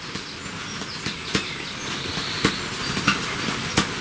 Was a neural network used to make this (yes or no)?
no